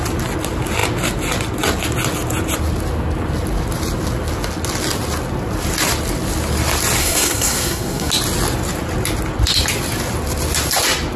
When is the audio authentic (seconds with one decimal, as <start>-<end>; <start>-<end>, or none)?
0.0-7.0; 8.1-11.2